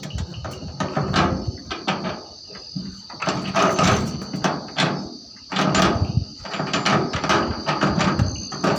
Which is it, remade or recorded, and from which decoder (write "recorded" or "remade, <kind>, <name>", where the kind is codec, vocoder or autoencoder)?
recorded